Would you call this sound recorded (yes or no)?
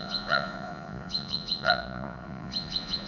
no